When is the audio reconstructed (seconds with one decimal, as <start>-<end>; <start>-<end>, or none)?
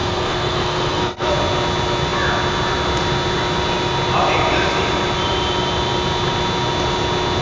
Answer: 0.0-1.3